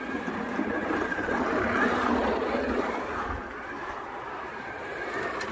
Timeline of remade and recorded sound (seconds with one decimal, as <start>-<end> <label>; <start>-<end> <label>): 0.0-5.5 remade